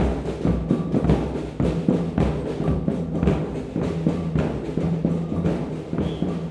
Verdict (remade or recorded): recorded